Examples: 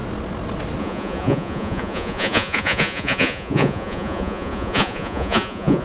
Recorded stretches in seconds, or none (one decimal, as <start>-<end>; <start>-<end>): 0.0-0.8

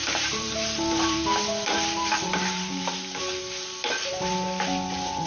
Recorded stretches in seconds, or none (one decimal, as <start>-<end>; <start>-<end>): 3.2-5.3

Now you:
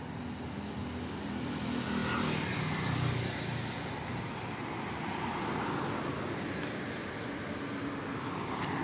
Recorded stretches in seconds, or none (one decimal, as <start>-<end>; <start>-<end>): 0.0-8.8

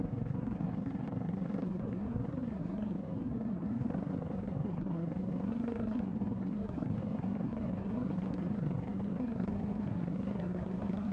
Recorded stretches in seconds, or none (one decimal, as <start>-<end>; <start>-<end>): none

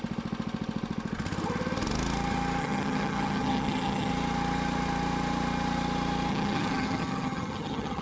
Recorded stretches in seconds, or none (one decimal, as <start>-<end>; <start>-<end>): 0.0-2.6; 4.1-6.3

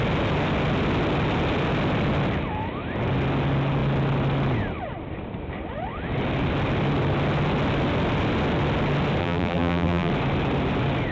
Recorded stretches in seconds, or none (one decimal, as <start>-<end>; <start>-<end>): 0.0-9.2; 10.1-11.1